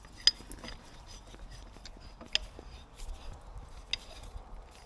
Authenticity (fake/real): real